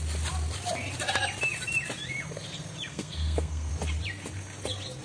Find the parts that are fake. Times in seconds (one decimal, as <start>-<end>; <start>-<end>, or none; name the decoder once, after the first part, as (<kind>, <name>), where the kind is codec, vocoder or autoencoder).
2.9-3.7 (codec, SNAC)